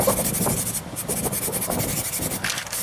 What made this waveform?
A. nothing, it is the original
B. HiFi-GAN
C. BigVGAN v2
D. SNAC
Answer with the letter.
A